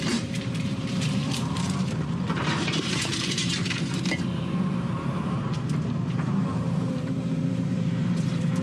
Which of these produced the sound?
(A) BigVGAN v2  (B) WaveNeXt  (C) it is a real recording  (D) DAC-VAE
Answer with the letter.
A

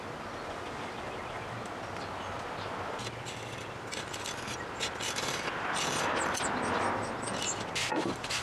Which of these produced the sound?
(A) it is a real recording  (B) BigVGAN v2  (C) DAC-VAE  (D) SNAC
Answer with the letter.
A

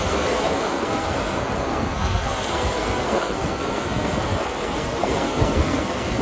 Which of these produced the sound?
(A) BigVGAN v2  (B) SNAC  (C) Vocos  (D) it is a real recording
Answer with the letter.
B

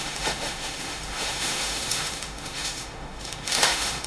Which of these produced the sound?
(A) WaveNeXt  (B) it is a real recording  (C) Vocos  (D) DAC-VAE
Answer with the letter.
D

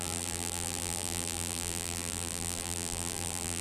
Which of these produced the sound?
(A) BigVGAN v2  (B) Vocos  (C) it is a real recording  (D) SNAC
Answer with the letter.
A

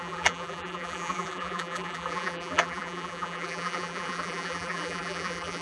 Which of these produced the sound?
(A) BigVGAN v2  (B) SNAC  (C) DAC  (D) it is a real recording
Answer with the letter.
A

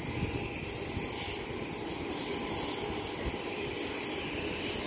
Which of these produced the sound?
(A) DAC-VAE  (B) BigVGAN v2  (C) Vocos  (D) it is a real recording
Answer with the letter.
D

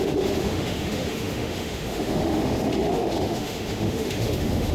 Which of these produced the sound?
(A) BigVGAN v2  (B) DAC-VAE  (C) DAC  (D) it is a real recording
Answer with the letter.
B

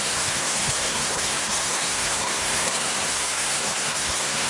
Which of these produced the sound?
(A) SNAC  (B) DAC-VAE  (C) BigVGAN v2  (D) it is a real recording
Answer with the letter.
A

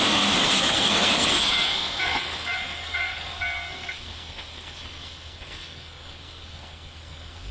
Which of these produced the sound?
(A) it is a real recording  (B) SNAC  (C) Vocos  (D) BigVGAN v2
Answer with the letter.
B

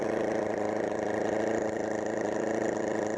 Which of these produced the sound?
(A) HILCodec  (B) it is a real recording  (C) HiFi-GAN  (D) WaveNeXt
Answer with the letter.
B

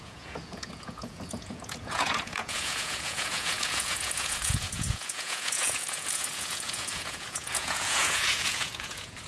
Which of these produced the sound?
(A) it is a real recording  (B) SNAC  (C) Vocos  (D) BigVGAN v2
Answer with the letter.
C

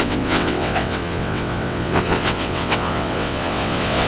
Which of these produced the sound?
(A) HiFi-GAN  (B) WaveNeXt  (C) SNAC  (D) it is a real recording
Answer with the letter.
B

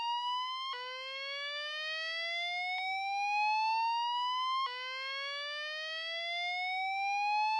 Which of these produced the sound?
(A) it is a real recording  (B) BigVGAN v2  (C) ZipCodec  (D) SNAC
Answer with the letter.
A